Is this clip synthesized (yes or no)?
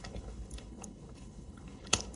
yes